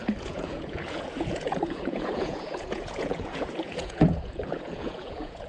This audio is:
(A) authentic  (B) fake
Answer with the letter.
B